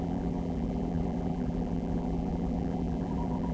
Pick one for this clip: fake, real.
fake